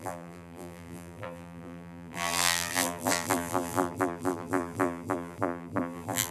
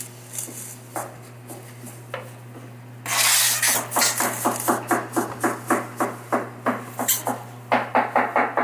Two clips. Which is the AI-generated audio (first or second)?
first